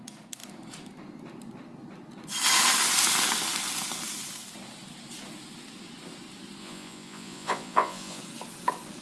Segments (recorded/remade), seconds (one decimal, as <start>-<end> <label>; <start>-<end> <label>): 0.0-6.6 recorded; 6.6-8.2 remade; 8.2-9.0 recorded